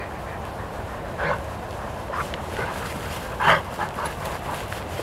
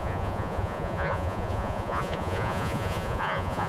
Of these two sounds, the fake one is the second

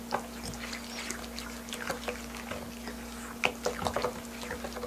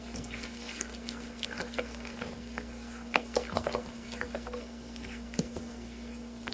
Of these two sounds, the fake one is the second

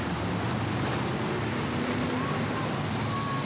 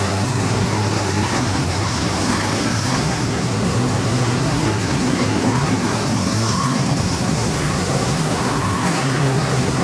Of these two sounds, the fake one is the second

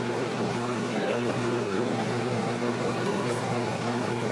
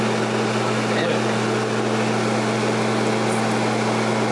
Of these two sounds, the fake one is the first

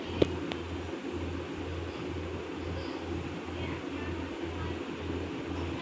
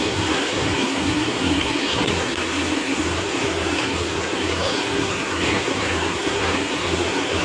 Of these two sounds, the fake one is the second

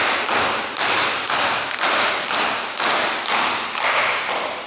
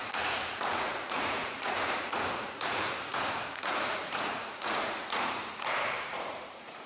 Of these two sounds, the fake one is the second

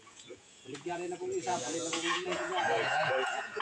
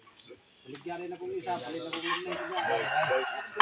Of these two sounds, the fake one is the first